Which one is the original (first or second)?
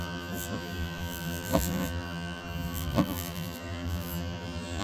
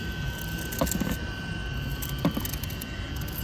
second